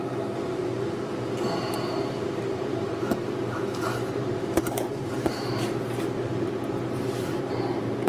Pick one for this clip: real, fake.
fake